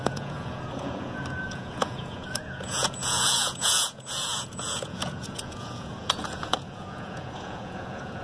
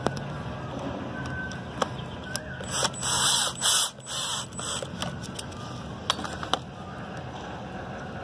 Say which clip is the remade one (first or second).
first